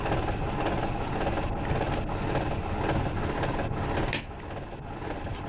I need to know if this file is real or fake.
real